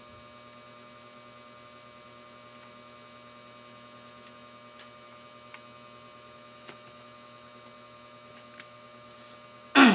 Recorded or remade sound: recorded